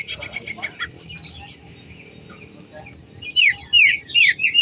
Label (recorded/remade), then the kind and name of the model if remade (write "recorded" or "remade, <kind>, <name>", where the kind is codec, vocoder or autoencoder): recorded